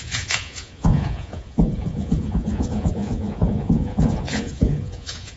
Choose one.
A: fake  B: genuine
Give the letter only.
A